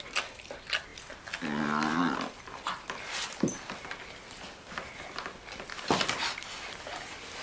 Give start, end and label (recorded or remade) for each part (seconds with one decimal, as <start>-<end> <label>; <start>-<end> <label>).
0.0-7.4 recorded